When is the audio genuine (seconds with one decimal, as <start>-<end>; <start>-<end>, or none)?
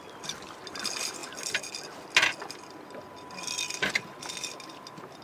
0.0-5.2